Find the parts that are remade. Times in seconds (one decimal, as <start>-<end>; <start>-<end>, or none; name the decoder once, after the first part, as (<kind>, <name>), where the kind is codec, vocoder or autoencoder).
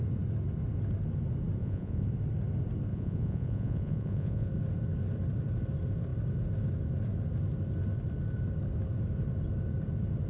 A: 1.6-2.1 (vocoder, Vocos); 2.9-4.5